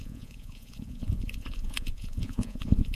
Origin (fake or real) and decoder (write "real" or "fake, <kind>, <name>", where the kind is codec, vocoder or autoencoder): fake, vocoder, Vocos